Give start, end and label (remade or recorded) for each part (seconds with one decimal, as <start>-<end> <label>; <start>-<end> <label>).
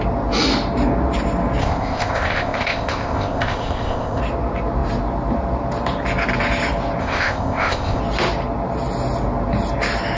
0.0-1.6 recorded; 1.6-4.2 remade; 4.2-7.0 recorded; 7.0-8.0 remade; 8.0-10.2 recorded